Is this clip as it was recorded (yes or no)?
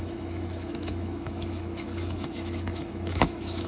no